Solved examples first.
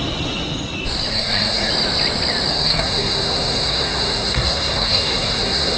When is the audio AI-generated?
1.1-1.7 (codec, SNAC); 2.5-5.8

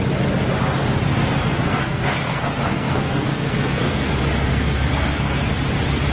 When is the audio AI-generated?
1.5-4.1 (codec, SNAC); 4.5-5.5

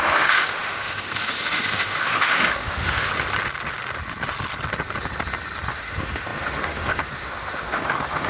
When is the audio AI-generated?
0.0-3.1 (autoencoder, DAC-VAE); 5.7-8.3

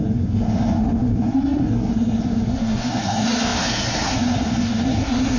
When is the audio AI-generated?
0.0-5.4 (codec, SNAC)

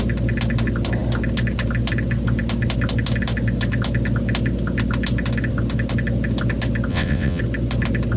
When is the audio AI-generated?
6.9-7.4 (vocoder, WaveNeXt)

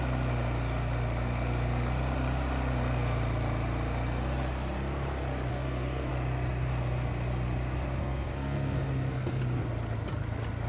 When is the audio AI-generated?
5.5-6.1 (codec, SNAC); 8.0-9.4

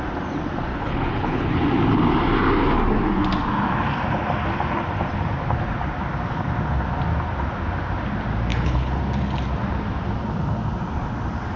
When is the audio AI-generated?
0.7-1.6 (codec, HILCodec); 8.5-9.0